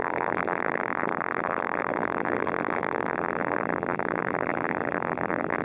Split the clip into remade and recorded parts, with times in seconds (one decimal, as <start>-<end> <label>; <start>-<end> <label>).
0.0-5.6 remade